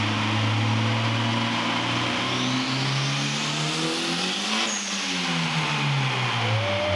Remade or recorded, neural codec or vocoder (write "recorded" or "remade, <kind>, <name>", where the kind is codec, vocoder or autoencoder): recorded